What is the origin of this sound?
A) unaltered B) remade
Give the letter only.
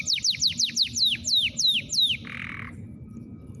A